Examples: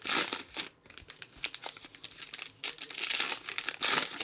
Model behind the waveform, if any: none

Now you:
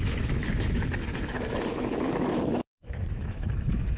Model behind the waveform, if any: autoencoder, DAC-VAE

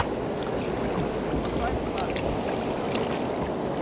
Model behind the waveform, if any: none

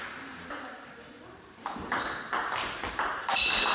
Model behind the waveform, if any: vocoder, BigVGAN v2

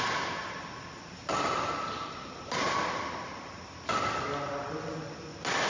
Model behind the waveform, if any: none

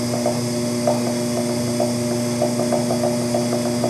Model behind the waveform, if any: none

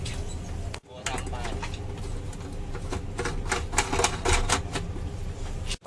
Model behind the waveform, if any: none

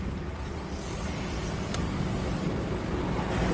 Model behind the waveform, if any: none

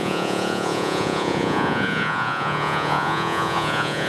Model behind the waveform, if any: vocoder, Vocos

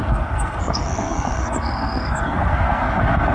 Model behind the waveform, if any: codec, SNAC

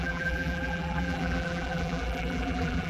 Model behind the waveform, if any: vocoder, BigVGAN v2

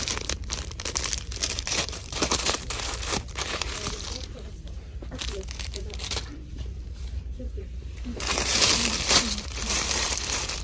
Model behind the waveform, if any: vocoder, BigVGAN v2